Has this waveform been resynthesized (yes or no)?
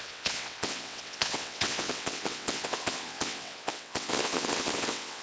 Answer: yes